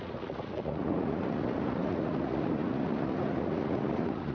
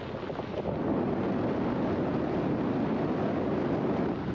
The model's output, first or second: first